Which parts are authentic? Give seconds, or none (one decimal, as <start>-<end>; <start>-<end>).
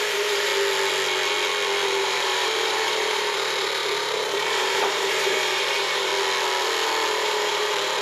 0.5-2.0; 6.1-7.1